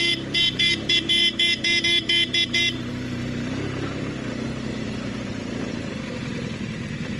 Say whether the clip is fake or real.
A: fake